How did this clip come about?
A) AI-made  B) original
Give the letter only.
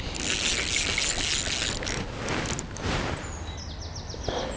B